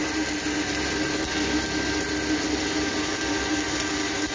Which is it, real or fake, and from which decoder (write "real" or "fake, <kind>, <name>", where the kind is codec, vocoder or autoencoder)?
real